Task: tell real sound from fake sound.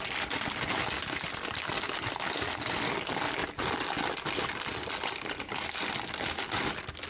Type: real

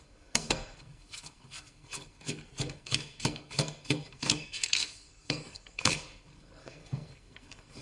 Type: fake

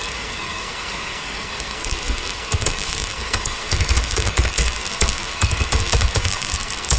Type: fake